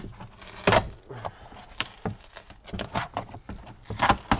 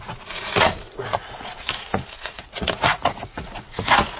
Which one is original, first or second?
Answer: first